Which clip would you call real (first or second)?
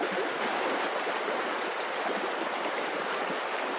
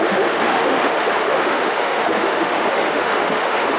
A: first